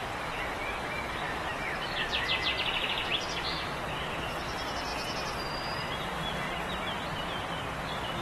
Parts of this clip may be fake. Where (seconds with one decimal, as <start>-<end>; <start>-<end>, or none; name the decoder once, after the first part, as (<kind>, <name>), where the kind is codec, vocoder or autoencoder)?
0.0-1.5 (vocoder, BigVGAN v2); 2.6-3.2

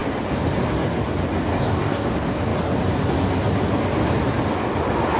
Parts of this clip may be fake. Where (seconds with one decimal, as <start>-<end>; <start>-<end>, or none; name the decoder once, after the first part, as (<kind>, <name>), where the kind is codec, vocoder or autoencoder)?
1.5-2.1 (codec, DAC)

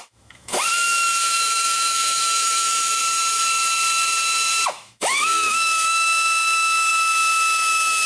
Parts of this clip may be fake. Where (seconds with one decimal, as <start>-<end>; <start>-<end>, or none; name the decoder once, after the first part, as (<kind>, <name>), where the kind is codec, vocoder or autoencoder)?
0.0-3.0 (autoencoder, DAC-VAE); 4.7-8.1